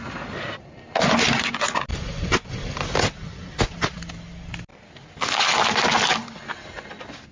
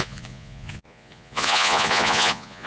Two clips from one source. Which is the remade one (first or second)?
second